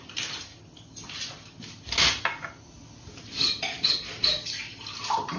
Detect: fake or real real